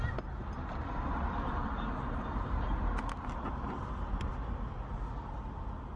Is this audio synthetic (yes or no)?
no